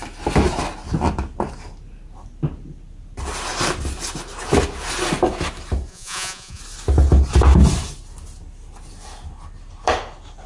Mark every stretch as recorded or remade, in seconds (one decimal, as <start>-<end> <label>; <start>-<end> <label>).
0.0-5.9 recorded; 5.9-6.6 remade; 6.6-10.5 recorded